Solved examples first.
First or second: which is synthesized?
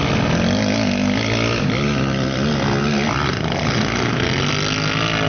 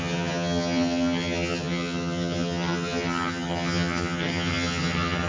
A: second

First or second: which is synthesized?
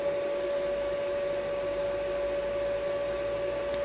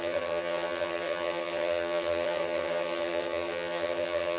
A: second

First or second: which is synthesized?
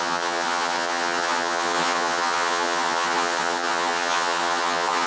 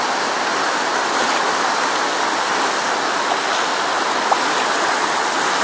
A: first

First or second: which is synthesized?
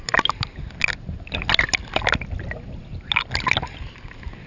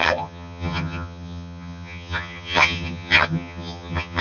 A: second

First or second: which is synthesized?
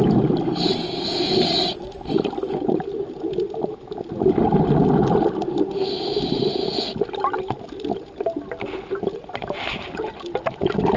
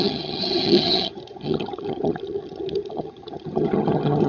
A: second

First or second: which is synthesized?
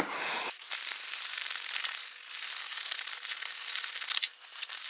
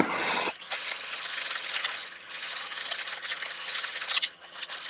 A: second